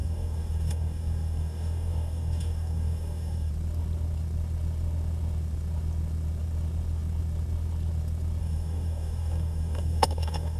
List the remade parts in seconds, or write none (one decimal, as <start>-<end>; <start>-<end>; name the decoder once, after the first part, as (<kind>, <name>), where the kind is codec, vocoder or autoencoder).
0.0-3.5 (codec, DAC); 8.4-10.6